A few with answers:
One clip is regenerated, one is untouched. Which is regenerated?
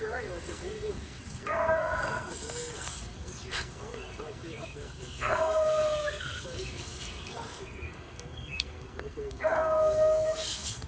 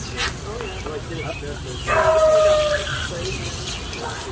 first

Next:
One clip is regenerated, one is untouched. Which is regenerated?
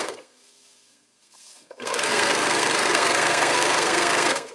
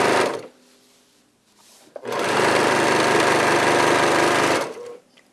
first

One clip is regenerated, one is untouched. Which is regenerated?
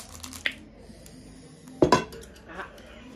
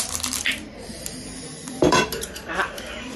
second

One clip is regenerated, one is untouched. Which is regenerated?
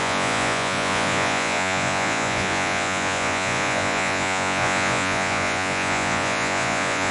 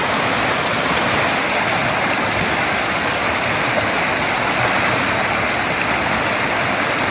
first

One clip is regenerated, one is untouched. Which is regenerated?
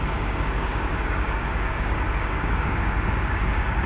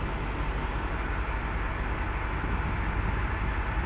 first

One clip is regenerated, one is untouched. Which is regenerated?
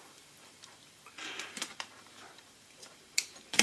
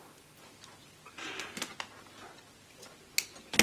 first